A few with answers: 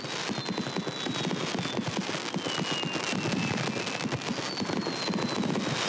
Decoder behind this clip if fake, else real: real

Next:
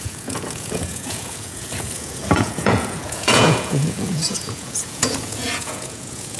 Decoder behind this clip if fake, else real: fake, vocoder, Vocos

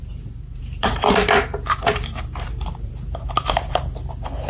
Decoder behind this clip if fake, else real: fake, vocoder, BigVGAN v2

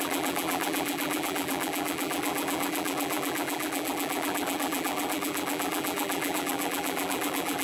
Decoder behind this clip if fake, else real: fake, vocoder, BigVGAN v2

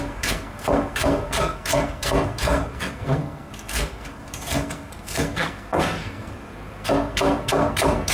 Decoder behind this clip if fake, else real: fake, codec, SNAC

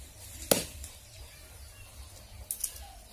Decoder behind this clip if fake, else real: real